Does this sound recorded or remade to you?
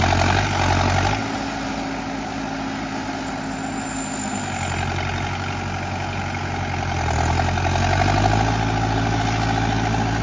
recorded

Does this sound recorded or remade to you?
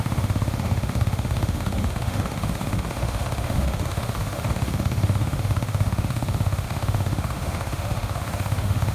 remade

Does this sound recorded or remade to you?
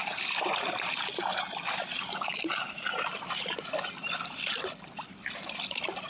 remade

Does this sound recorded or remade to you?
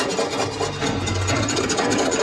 recorded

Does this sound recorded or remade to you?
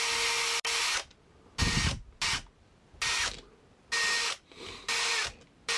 recorded